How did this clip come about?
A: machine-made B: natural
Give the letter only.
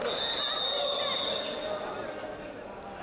B